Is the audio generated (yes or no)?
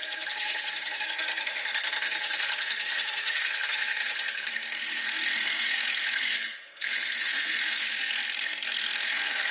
yes